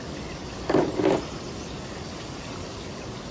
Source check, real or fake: real